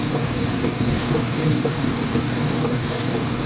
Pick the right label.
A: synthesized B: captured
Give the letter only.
A